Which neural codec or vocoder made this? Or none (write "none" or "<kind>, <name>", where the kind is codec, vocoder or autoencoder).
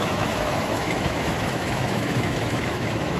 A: autoencoder, DAC-VAE